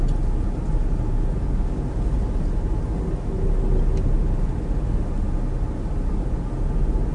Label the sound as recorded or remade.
recorded